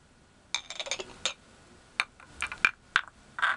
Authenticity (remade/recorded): recorded